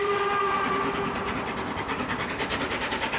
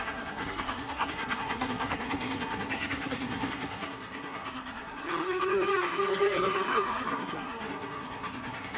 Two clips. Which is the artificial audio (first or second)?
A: second